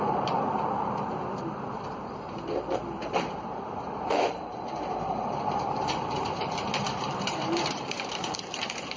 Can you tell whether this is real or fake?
fake